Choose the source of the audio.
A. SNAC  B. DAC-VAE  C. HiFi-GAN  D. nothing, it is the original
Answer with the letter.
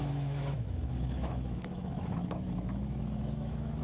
B